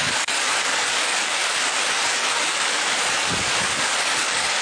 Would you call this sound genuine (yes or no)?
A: no